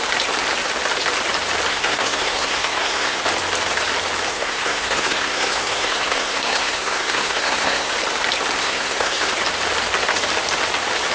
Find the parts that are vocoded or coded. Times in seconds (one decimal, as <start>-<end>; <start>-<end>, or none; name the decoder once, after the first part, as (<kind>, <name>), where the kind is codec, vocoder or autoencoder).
1.7-3.2 (codec, SNAC); 4.3-7.9; 8.6-9.3